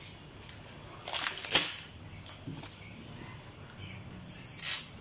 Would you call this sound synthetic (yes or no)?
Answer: no